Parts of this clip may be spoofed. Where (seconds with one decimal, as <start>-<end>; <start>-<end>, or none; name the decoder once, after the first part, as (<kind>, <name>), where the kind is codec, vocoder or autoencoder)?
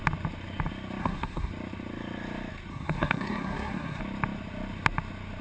1.0-1.5 (codec, SNAC); 2.7-4.0